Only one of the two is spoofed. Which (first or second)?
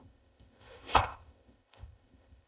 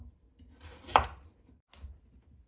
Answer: first